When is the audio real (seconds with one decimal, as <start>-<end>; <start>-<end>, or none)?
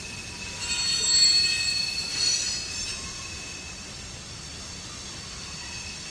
0.0-6.1